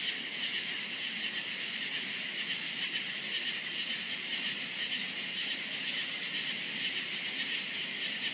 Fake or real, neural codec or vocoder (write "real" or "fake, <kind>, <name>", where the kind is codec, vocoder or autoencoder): real